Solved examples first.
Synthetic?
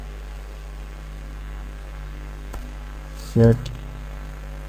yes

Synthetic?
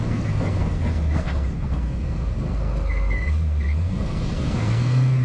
yes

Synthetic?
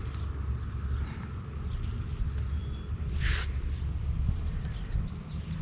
no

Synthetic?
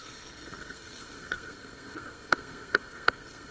yes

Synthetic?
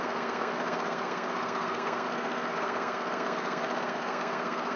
yes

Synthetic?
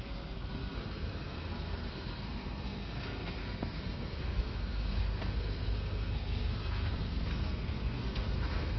yes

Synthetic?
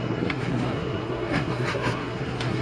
yes